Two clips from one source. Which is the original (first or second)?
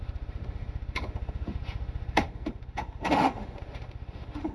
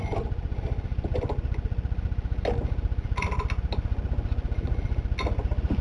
second